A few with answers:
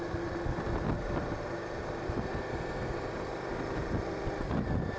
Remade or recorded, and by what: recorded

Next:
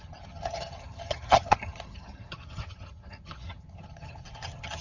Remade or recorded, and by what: remade, vocoder, HiFi-GAN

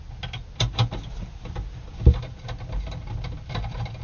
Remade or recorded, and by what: recorded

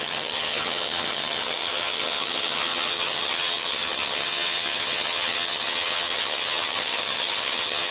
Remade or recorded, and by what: remade, vocoder, HiFi-GAN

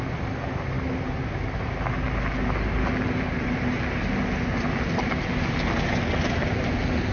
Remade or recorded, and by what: recorded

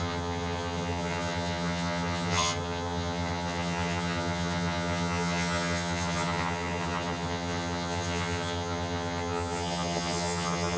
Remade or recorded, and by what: remade, vocoder, HiFi-GAN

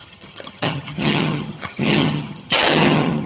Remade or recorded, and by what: remade, vocoder, HiFi-GAN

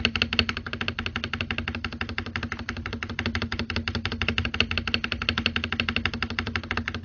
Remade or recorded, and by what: recorded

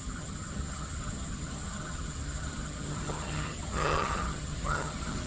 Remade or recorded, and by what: remade, vocoder, HiFi-GAN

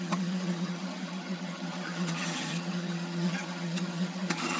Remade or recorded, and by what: remade, vocoder, HiFi-GAN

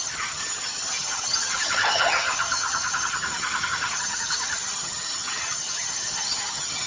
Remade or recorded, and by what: remade, vocoder, HiFi-GAN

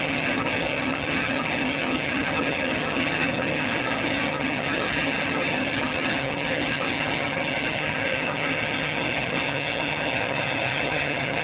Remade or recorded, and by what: remade, vocoder, HiFi-GAN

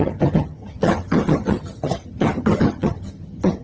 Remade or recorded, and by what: remade, vocoder, HiFi-GAN